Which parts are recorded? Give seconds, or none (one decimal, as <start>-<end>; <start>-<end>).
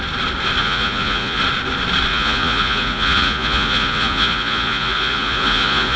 0.0-0.6; 1.4-2.1